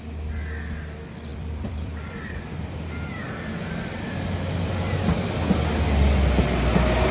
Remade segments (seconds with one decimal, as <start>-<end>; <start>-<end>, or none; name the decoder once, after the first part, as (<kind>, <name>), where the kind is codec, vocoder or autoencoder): 1.3-4.7 (vocoder, BigVGAN v2)